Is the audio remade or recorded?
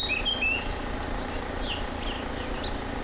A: recorded